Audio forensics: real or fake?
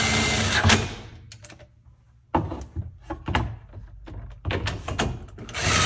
real